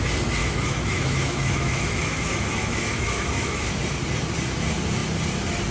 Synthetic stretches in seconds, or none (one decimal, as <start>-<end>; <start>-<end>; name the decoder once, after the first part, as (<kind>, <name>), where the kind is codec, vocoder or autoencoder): 0.4-3.8 (autoencoder, DAC-VAE)